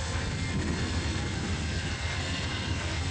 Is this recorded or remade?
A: remade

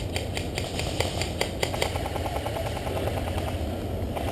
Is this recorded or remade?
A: recorded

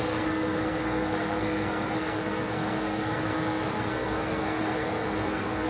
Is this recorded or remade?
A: remade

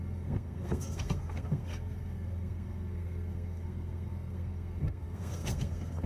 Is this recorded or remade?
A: remade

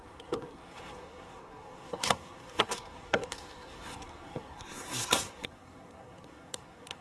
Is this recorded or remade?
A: remade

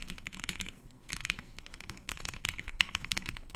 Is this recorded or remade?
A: remade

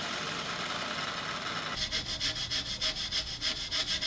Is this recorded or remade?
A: recorded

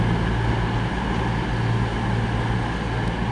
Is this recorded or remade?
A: recorded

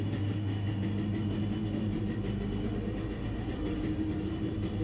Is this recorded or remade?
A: recorded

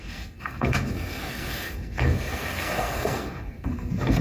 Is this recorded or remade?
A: remade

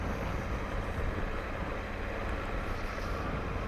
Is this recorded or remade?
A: recorded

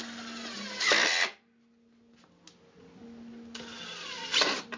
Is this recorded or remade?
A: recorded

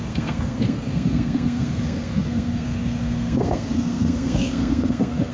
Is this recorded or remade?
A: remade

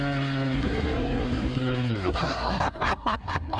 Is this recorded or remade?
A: remade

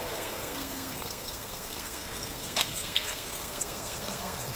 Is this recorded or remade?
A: remade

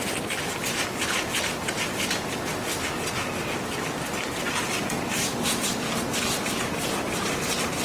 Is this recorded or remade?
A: recorded